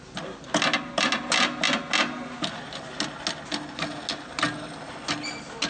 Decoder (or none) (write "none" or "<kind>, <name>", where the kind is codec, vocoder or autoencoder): none